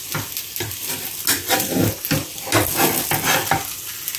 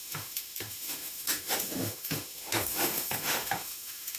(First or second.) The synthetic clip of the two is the second